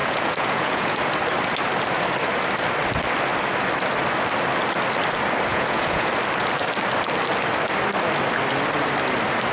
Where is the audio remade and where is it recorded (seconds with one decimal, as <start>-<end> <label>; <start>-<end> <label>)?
0.0-1.0 remade; 1.0-5.5 recorded; 5.5-6.1 remade; 6.1-9.5 recorded

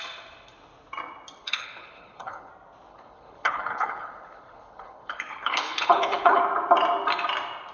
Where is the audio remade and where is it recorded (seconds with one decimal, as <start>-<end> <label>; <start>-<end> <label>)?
0.0-1.4 recorded; 1.4-2.5 remade; 2.5-2.9 recorded; 2.9-6.4 remade; 6.4-7.7 recorded

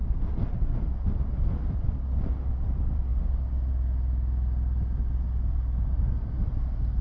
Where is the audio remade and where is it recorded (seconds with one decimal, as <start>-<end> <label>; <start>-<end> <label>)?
0.0-7.0 recorded

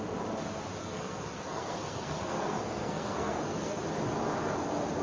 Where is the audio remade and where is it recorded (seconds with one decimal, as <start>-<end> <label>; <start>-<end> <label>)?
0.0-0.8 recorded; 0.8-3.8 remade; 3.8-5.0 recorded